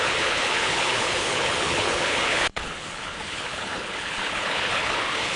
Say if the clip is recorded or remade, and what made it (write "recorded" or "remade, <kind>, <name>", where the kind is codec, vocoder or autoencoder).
remade, codec, HILCodec